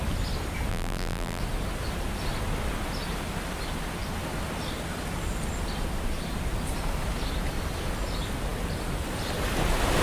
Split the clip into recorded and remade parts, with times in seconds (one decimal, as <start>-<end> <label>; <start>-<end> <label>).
0.0-0.7 recorded; 0.7-1.4 remade; 1.4-10.0 recorded